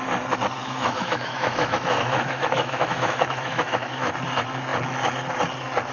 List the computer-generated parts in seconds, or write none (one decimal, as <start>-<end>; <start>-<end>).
0.6-4.1